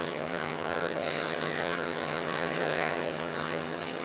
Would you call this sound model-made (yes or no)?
yes